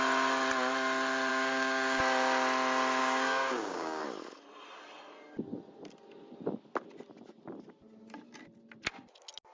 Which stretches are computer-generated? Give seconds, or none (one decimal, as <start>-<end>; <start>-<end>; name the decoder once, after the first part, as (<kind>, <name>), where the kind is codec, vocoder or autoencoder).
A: 1.3-2.0 (codec, DAC); 3.0-4.0